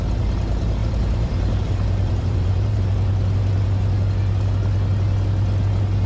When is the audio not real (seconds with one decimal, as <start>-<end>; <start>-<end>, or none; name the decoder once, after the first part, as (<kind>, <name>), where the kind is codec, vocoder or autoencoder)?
0.8-2.8 (vocoder, BigVGAN v2)